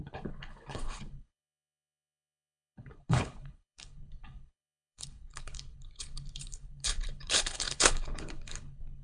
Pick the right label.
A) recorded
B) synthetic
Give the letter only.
B